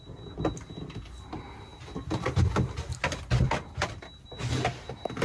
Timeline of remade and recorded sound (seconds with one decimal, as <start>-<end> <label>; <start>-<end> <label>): 0.0-5.2 recorded